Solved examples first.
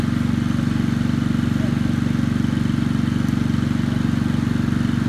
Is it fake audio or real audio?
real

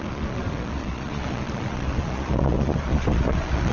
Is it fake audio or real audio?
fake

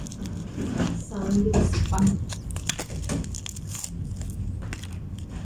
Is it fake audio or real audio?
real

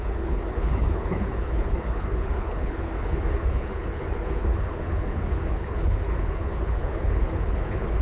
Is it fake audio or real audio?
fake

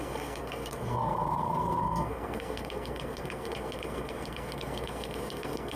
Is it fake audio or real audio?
fake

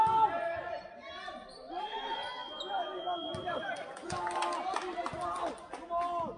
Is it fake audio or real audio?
real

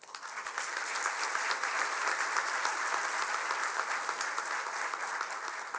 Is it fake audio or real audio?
real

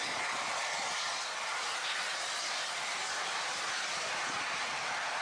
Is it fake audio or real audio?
real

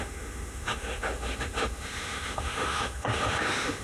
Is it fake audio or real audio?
fake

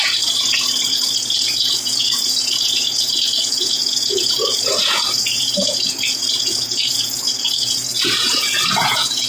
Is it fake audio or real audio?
fake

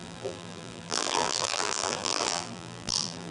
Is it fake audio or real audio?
fake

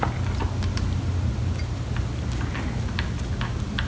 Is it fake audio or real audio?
real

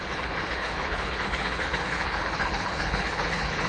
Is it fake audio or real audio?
fake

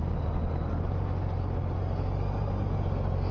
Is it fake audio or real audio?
real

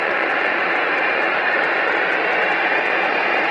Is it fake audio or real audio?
fake